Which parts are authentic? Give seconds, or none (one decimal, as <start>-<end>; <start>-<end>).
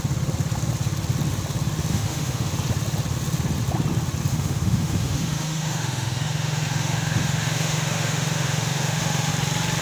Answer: 0.0-1.9; 2.5-4.3; 9.3-9.8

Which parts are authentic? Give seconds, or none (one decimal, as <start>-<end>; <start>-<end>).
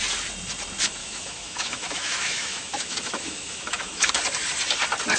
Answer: 0.0-1.0; 4.1-5.2